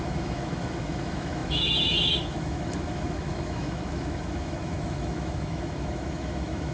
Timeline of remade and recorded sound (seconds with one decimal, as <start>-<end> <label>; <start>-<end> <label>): 0.0-6.7 remade